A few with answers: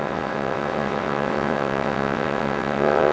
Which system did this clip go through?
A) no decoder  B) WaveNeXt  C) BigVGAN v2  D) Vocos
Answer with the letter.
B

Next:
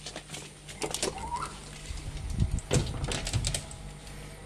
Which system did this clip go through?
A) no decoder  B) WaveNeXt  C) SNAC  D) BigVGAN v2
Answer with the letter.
A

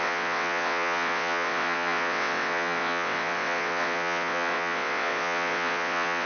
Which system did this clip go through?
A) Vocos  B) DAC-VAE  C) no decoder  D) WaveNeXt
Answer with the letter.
D